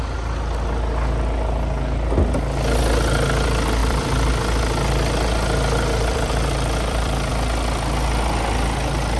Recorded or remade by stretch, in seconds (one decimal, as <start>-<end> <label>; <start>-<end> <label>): 0.0-3.8 recorded; 3.8-7.3 remade; 7.3-9.2 recorded